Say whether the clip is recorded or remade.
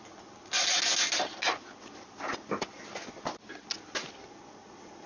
recorded